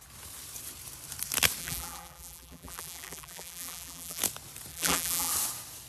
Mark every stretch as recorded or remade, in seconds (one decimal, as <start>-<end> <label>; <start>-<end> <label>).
0.0-1.6 recorded; 1.6-4.2 remade; 4.2-4.7 recorded; 4.7-5.3 remade; 5.3-5.9 recorded